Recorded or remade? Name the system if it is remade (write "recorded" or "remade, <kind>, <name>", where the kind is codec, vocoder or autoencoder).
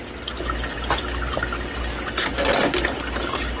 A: recorded